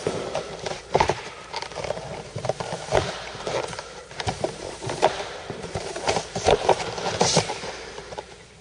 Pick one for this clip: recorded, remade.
remade